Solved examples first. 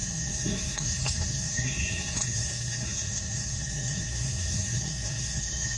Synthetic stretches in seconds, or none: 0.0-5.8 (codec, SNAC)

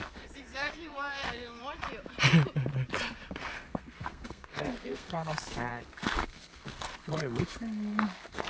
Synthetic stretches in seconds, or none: 0.0-1.6 (codec, SNAC); 3.3-8.5

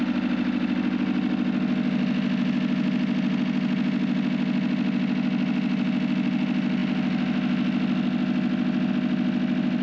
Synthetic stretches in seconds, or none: none

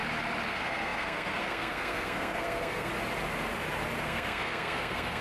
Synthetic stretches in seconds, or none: 0.5-2.9 (codec, SNAC); 4.0-5.2

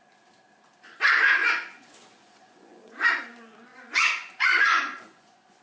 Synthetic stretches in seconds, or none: 1.4-3.2 (vocoder, Vocos); 3.7-5.6